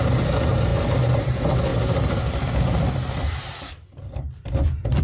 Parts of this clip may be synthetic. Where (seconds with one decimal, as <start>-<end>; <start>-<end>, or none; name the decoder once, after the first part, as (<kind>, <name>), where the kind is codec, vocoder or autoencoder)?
1.7-5.0 (vocoder, BigVGAN v2)